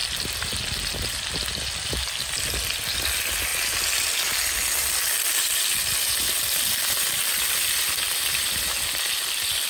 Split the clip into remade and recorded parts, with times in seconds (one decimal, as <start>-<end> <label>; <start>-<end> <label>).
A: 0.0-9.7 recorded